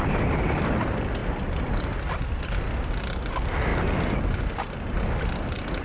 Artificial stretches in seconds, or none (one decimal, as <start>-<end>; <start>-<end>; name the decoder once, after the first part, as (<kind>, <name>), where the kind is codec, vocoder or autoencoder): none